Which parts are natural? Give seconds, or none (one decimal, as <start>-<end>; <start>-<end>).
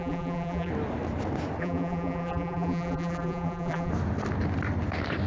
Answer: 0.7-1.6; 3.9-5.3